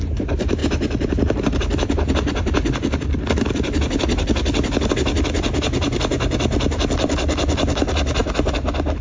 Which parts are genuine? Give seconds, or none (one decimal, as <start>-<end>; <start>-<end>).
0.0-0.6; 4.9-8.2

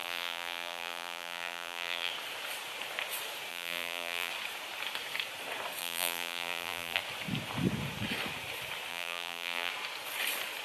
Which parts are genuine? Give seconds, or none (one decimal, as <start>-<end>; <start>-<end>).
2.1-3.5; 4.3-5.8; 7.0-8.9; 9.7-10.6